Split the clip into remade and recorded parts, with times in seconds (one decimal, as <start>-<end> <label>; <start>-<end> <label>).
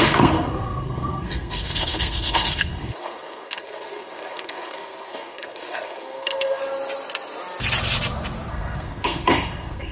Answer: 0.0-6.6 remade; 6.6-8.5 recorded; 8.5-9.9 remade